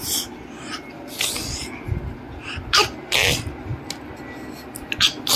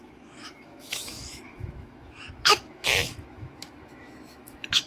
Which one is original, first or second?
first